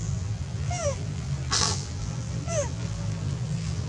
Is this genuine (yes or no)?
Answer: no